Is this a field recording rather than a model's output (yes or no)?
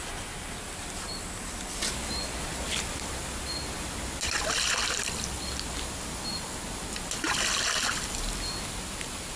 yes